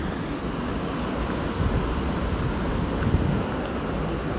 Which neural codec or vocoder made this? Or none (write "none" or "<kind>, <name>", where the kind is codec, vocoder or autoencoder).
none